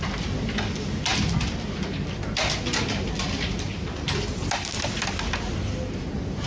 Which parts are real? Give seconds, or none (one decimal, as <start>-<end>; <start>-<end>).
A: 0.0-6.5